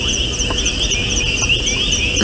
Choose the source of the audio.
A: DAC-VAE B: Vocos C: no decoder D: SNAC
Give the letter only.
C